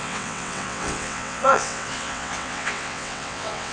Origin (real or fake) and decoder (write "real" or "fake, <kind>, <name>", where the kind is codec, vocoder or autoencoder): fake, vocoder, WaveNeXt